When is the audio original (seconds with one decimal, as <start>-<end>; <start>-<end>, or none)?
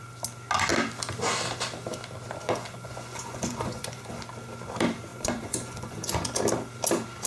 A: 0.0-2.4; 4.2-5.1; 6.4-7.3